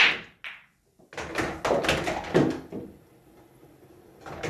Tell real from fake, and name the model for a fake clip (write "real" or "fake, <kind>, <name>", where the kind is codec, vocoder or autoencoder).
real